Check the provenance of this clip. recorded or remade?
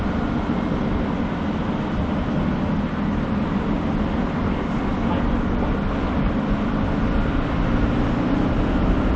recorded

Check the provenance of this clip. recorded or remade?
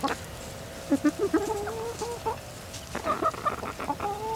recorded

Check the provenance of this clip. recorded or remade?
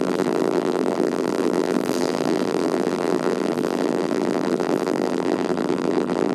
remade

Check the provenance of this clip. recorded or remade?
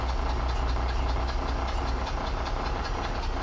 recorded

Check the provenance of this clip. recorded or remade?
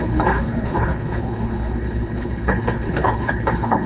remade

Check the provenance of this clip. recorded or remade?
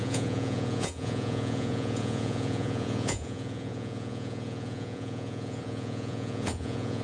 remade